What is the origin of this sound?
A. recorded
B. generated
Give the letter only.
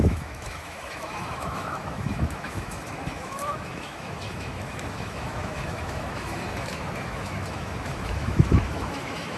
B